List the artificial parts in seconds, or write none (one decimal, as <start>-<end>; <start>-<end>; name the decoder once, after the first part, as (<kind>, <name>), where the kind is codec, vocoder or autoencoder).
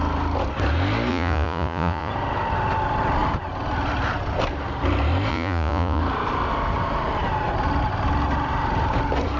1.1-2.1 (vocoder, Vocos); 5.3-6.0